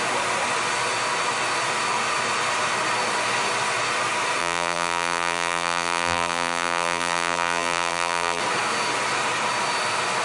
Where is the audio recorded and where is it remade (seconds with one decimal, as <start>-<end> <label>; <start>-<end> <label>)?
0.0-4.4 recorded; 4.4-8.4 remade; 8.4-10.2 recorded